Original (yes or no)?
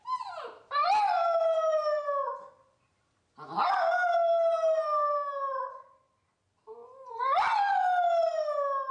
yes